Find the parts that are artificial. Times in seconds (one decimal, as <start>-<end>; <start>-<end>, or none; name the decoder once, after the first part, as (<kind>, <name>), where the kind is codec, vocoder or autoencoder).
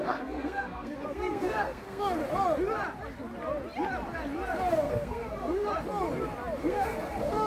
0.0-2.2 (codec, SNAC); 4.7-5.7; 6.6-7.5